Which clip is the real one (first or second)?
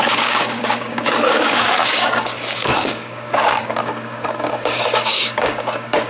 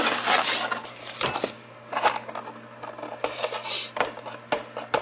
second